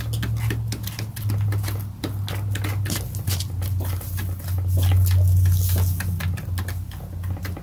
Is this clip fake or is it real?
real